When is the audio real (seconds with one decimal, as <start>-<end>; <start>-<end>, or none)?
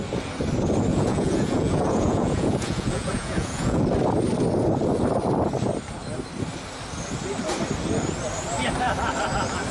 0.0-0.9; 3.8-9.7